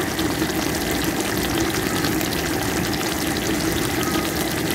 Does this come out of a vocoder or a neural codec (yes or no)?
no